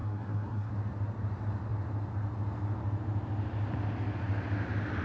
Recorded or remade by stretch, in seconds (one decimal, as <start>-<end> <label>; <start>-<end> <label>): 0.0-0.7 remade; 0.7-5.0 recorded